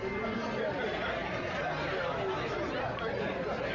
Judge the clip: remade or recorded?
recorded